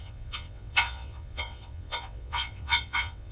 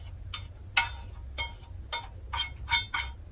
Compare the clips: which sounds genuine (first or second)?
second